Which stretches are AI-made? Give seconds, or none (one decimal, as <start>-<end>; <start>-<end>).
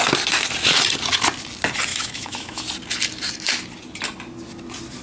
1.9-2.6